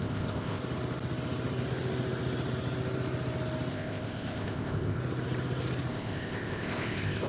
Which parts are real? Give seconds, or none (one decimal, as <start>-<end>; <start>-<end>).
0.6-3.7; 5.0-5.9